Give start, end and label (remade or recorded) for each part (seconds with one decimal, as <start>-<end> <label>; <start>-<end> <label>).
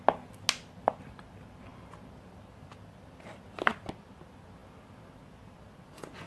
0.0-6.3 recorded